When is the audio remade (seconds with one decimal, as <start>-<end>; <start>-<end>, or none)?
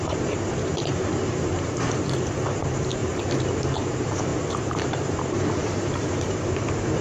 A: 0.0-3.0; 3.7-7.0